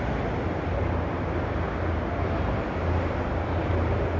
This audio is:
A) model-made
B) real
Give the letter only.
B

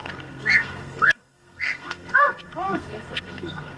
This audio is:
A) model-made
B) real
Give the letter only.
A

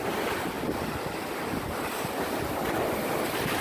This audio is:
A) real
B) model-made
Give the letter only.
A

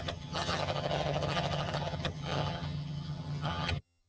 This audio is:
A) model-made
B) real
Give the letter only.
A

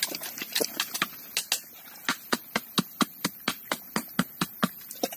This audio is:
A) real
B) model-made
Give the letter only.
A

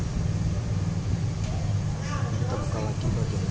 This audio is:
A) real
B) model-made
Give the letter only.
A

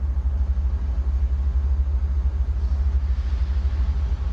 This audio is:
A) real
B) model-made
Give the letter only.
A